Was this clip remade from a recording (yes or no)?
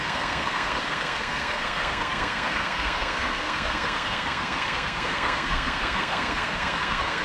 yes